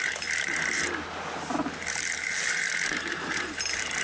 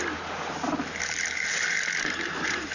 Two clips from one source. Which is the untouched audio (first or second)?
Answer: first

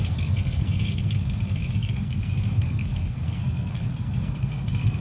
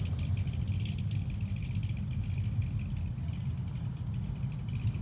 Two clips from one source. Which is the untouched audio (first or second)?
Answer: second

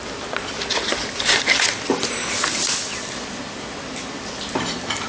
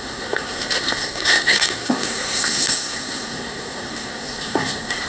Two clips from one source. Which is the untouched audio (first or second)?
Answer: first